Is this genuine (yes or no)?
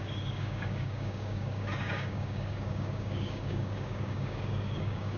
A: no